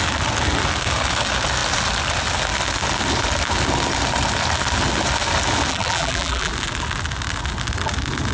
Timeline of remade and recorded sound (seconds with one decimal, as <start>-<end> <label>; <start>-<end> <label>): 0.0-5.7 recorded; 5.7-6.5 remade; 6.5-8.3 recorded